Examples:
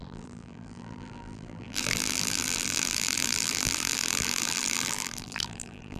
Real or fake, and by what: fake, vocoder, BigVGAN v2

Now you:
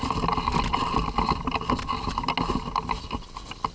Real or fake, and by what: real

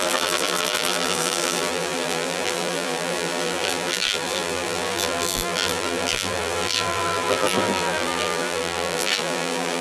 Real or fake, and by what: fake, vocoder, BigVGAN v2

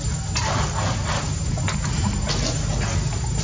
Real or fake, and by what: real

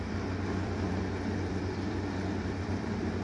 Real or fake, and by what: fake, vocoder, BigVGAN v2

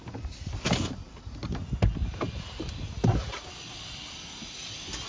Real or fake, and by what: real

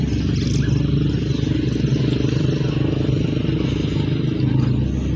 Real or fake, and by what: real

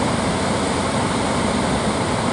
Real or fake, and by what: fake, vocoder, BigVGAN v2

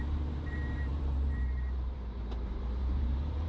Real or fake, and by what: fake, vocoder, BigVGAN v2